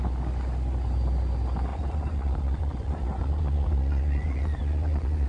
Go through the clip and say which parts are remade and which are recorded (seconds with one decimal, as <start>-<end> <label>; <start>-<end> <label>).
0.0-1.7 recorded; 1.7-5.3 remade